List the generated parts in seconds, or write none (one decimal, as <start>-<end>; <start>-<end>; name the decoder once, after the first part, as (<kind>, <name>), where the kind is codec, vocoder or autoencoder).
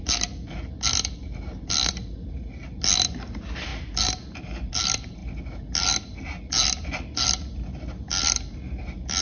none